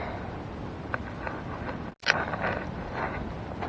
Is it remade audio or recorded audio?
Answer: recorded